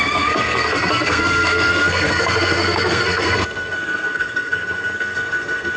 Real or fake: fake